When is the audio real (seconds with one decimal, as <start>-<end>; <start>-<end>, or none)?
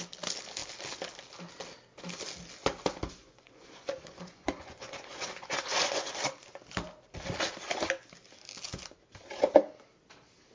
0.0-3.2; 6.1-10.5